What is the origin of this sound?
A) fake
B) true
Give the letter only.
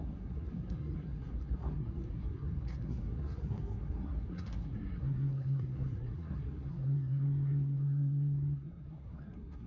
A